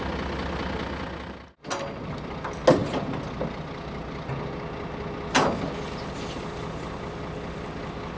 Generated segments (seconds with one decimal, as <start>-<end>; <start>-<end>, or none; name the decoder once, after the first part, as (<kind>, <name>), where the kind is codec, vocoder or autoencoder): none